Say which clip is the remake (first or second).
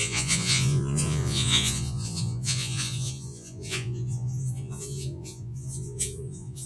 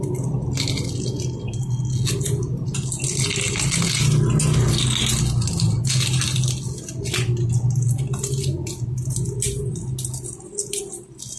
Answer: first